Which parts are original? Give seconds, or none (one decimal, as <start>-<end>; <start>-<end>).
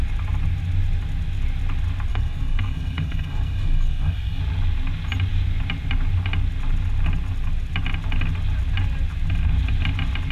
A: 0.0-2.1; 4.4-10.3